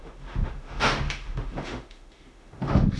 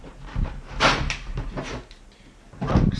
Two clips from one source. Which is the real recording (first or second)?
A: second